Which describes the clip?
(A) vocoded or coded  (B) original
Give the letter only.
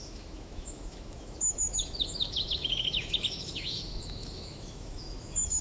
A